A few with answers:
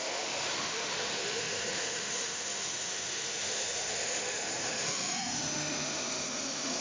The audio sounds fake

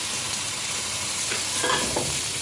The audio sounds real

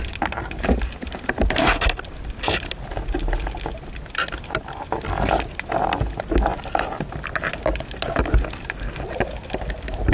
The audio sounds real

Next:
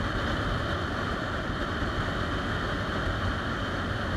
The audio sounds real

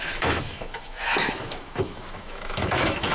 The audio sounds fake